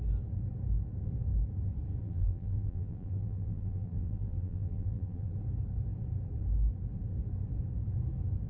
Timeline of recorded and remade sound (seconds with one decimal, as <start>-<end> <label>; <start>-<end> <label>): 0.0-2.0 recorded; 2.0-5.3 remade; 5.3-8.5 recorded